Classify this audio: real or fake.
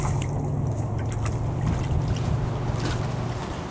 real